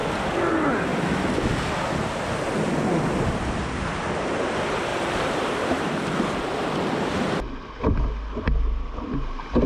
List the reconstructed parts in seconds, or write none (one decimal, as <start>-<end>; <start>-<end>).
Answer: 4.9-6.1